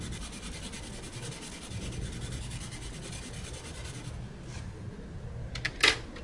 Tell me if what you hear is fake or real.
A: real